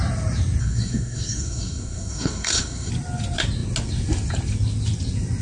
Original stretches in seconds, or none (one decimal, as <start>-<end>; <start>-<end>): 0.0-0.6; 2.9-5.4